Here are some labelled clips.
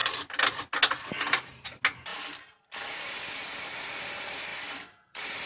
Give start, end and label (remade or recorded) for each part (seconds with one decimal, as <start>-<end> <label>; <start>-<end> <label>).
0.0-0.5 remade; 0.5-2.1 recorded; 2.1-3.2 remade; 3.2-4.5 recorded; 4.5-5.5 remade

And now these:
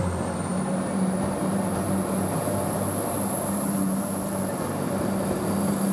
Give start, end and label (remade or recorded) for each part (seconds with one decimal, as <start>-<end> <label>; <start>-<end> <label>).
0.0-5.9 remade

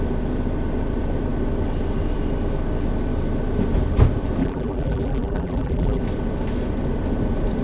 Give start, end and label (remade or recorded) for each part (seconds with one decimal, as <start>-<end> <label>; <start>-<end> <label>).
0.0-4.4 recorded; 4.4-6.0 remade; 6.0-7.6 recorded

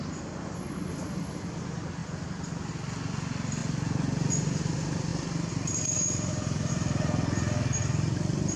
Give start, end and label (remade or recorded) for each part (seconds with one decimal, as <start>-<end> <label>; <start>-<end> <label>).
0.0-8.6 recorded

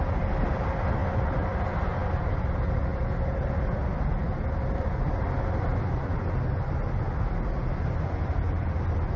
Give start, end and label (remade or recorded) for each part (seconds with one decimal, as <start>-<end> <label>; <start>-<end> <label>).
0.0-9.2 recorded

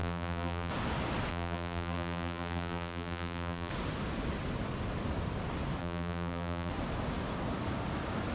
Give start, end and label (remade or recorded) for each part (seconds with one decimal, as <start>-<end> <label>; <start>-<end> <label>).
0.0-0.7 remade; 0.7-1.3 recorded; 1.3-3.7 remade; 3.7-5.8 recorded; 5.8-6.7 remade; 6.7-8.3 recorded